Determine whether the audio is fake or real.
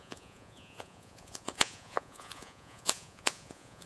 fake